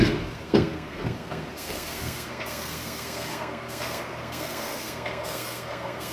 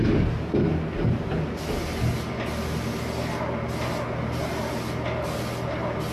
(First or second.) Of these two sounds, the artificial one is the first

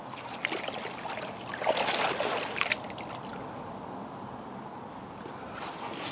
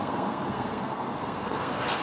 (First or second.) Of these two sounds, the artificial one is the second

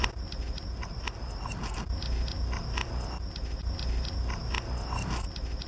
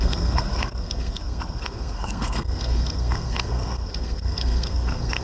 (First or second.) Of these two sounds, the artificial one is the second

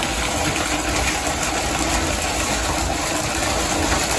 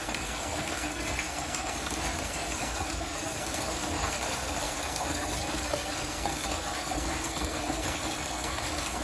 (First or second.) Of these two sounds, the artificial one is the second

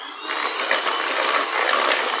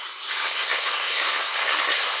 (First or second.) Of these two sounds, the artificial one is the second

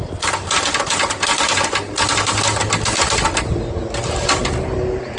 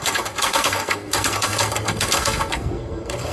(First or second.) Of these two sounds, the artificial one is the second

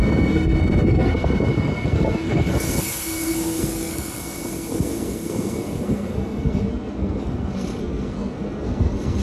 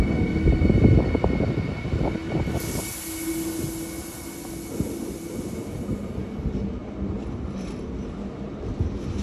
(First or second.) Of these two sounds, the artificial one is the first